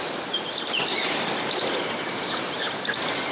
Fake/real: real